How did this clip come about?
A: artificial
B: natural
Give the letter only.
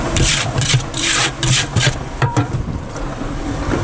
A